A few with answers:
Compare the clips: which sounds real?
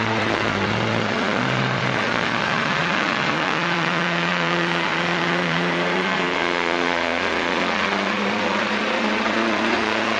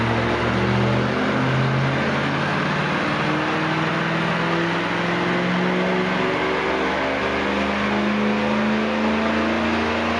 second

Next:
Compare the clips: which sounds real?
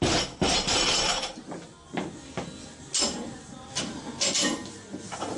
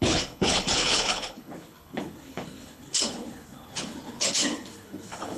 first